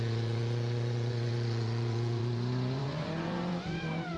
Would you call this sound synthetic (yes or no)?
yes